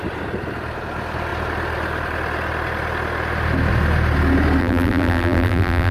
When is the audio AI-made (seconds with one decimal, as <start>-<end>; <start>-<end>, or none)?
4.6-5.9